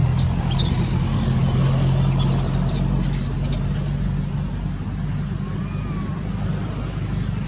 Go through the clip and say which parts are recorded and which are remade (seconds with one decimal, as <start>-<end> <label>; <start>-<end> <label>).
0.0-7.5 recorded